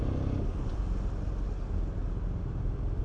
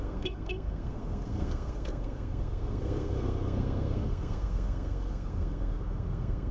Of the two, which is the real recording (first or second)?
first